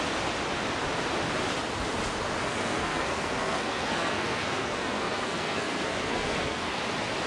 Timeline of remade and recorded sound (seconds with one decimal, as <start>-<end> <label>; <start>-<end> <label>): 0.0-2.4 recorded; 2.4-6.8 remade; 6.8-7.3 recorded